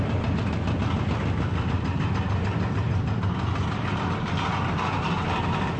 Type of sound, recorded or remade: recorded